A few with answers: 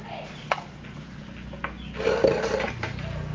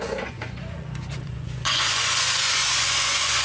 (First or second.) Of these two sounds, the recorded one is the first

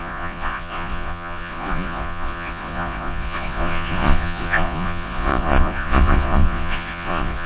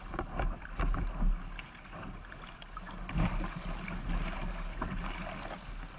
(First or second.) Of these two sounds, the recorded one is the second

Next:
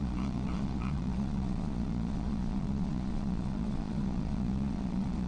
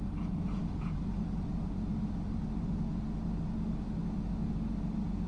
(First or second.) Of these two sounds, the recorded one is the second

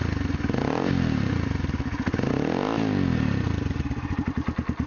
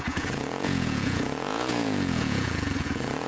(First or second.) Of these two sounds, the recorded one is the first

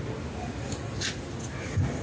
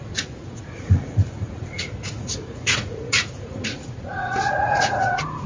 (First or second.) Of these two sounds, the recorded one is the first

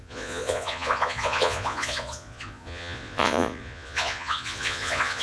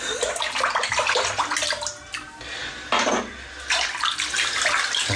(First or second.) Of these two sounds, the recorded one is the second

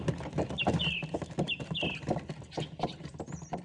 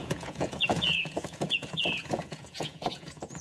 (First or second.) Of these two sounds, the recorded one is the first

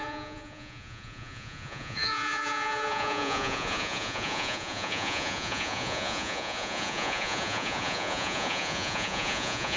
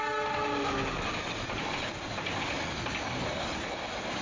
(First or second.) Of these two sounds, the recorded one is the second